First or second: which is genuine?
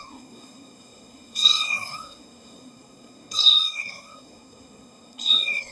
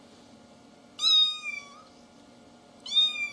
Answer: second